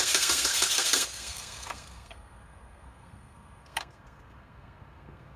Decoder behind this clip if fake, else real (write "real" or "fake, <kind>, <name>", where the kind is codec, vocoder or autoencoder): fake, codec, SNAC